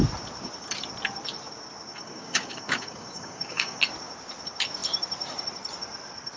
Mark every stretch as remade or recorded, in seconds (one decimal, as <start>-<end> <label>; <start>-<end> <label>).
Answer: 0.0-1.9 recorded; 1.9-3.8 remade; 3.8-6.4 recorded